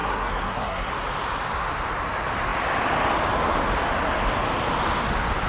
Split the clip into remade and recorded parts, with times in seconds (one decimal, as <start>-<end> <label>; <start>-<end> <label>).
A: 0.0-0.9 remade; 0.9-5.5 recorded